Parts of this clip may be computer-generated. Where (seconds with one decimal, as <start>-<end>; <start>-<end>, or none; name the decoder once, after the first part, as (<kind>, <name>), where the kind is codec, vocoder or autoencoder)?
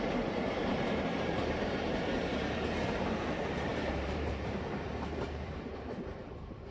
0.6-3.0 (vocoder, BigVGAN v2); 3.7-6.2